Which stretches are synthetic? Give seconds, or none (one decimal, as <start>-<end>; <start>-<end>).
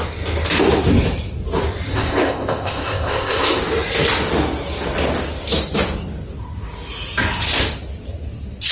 1.9-3.6